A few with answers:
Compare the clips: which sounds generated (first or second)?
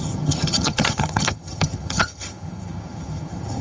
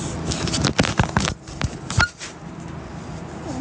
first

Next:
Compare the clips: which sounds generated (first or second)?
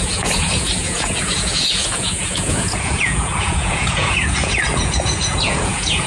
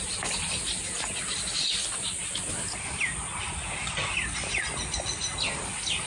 first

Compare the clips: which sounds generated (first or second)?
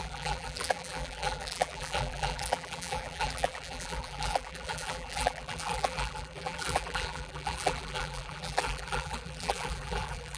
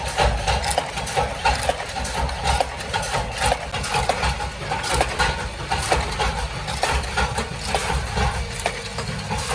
first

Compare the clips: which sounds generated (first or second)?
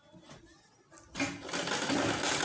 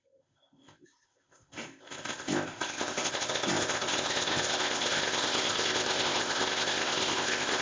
second